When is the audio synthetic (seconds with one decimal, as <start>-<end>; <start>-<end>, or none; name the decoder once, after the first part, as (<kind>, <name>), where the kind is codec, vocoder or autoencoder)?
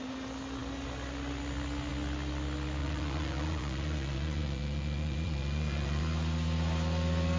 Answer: 2.8-6.0 (vocoder, Vocos)